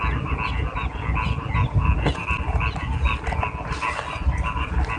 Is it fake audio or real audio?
real